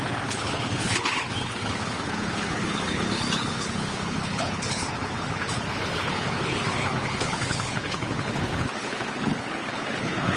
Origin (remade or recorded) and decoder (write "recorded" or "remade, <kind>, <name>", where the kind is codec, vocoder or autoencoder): remade, codec, HILCodec